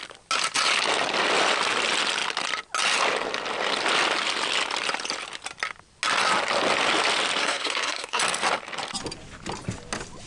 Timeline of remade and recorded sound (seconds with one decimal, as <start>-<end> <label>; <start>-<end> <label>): 0.0-7.4 recorded; 7.4-8.2 remade; 8.2-10.3 recorded